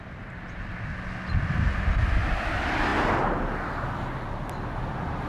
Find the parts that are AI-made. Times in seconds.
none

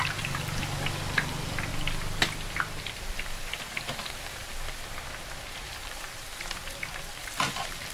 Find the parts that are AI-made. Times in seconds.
0.0-1.7 (vocoder, BigVGAN v2); 2.8-4.4; 5.2-7.9

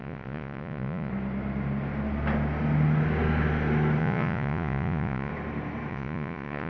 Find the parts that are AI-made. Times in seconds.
0.0-1.1 (vocoder, Vocos); 4.0-5.3; 5.9-6.7

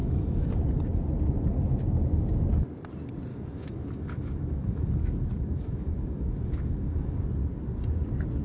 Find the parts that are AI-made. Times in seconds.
0.0-0.6 (autoencoder, DAC-VAE); 3.3-7.2

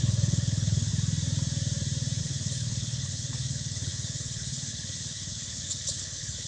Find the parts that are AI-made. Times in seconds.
0.0-0.9 (codec, HILCodec); 2.2-6.5

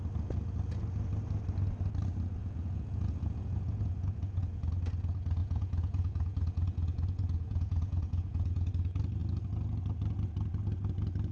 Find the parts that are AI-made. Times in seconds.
2.4-4.7 (vocoder, Vocos); 5.4-8.7